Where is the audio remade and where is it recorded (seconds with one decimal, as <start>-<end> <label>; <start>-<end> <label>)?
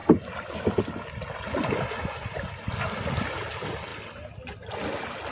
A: 0.0-5.3 recorded